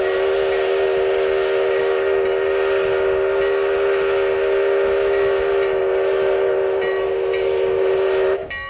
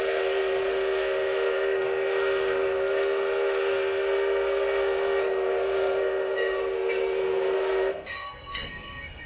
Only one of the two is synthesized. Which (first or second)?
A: second